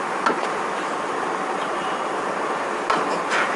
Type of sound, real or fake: real